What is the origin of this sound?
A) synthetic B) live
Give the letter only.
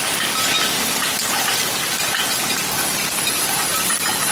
B